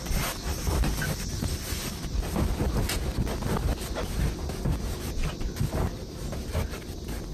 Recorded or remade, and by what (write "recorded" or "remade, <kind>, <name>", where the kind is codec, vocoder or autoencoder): recorded